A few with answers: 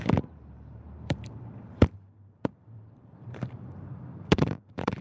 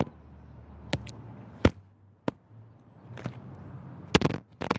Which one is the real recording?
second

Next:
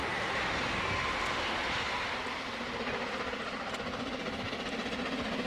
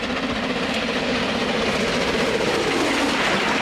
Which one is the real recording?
first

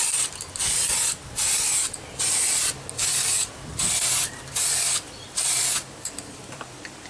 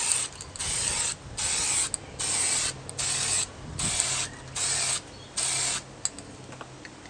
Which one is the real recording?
second